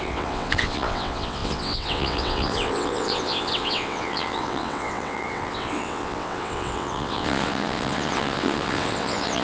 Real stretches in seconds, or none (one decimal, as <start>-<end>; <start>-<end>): none